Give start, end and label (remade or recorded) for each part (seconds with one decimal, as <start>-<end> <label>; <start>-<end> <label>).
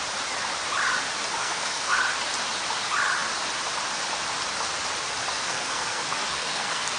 0.0-1.4 recorded; 1.4-2.0 remade; 2.0-5.4 recorded; 5.4-7.0 remade